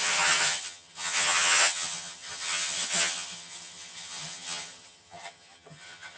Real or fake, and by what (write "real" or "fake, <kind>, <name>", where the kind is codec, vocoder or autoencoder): fake, vocoder, HiFi-GAN